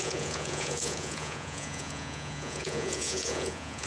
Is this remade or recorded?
remade